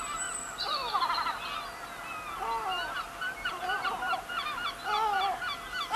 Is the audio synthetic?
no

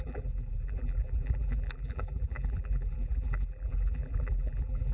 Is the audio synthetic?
yes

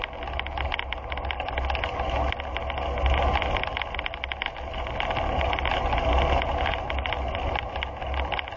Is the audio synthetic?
no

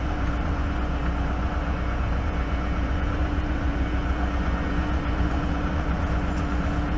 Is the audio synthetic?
yes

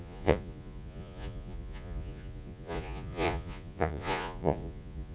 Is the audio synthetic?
yes